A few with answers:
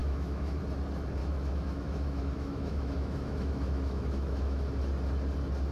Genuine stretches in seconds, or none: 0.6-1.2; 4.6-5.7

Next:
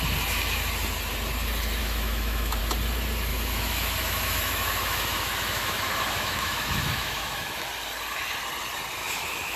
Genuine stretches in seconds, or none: 0.0-1.8; 2.6-3.3; 7.7-9.0

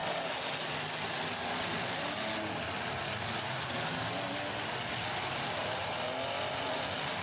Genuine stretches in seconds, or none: 0.0-7.2

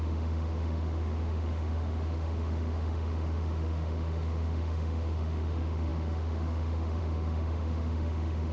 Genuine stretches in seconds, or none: none